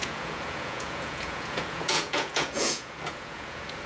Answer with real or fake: fake